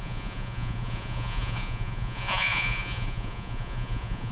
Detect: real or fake fake